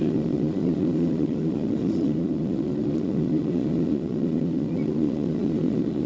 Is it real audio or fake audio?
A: fake